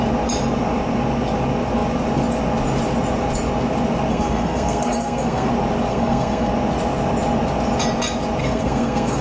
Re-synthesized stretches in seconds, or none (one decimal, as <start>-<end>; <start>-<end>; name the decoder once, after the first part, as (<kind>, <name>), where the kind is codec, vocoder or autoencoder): 4.1-5.5 (codec, SNAC); 5.9-6.5; 8.4-9.2